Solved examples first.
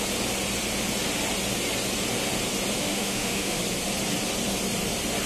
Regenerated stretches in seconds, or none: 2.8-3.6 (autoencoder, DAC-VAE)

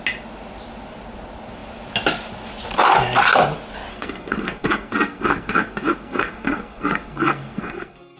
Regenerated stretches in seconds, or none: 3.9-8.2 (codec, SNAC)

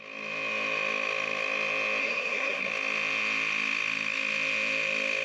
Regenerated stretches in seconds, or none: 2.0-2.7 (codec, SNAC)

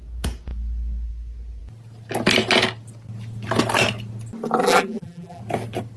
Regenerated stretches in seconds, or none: 4.6-5.4 (vocoder, BigVGAN v2)